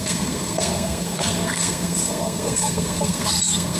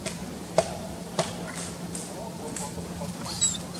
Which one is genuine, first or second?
second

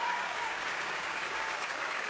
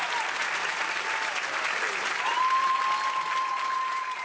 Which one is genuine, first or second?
second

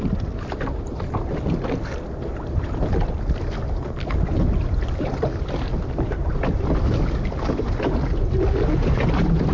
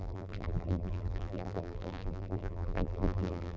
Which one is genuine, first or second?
first